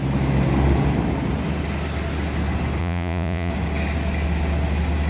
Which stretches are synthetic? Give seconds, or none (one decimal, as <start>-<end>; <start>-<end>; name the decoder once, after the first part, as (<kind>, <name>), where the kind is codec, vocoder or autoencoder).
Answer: 2.8-3.5 (vocoder, Vocos)